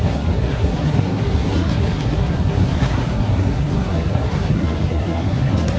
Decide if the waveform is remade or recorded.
remade